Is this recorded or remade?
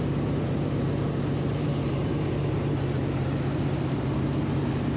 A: remade